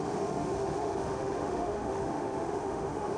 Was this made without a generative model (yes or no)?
no